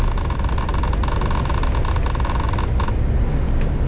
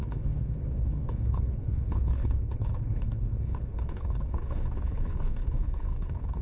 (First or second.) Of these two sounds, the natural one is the first